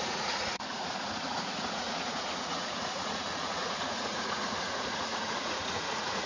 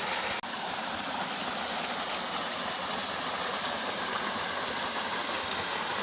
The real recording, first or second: second